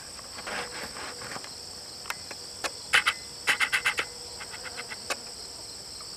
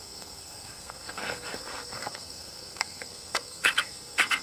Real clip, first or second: first